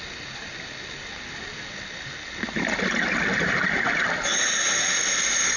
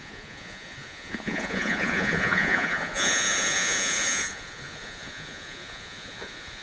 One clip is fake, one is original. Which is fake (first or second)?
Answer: second